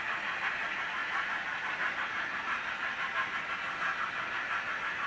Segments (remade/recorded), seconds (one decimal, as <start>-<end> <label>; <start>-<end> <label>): 0.0-1.0 recorded; 1.0-3.5 remade; 3.5-3.9 recorded; 3.9-4.6 remade; 4.6-5.1 recorded